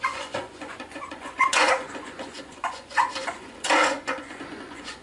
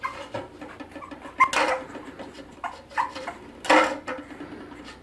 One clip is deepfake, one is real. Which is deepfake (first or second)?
first